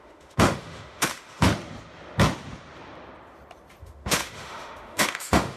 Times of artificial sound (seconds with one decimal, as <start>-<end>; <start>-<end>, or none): 0.0-1.5; 3.8-5.6